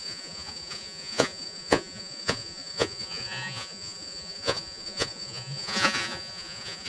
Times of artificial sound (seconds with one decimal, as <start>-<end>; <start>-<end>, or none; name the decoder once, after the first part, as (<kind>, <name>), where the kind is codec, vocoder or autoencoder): 0.0-6.9 (vocoder, Vocos)